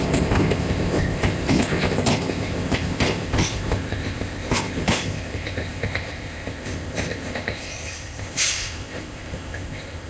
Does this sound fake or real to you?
fake